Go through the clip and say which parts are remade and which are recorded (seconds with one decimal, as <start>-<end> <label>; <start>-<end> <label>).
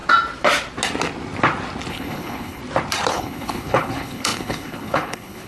0.0-1.9 recorded; 1.9-2.6 remade; 2.6-3.1 recorded; 3.1-5.5 remade